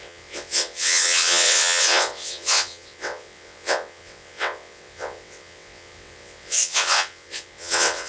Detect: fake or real fake